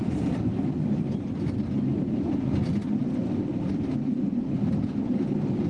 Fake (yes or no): no